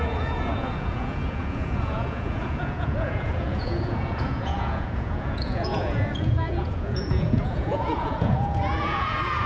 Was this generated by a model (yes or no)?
yes